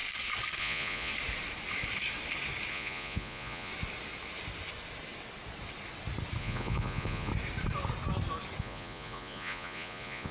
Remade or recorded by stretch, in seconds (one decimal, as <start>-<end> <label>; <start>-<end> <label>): 0.0-0.6 recorded; 0.6-1.1 remade; 1.1-2.7 recorded; 2.7-3.7 remade; 3.7-6.4 recorded; 6.4-7.3 remade; 7.3-8.6 recorded; 8.6-10.3 remade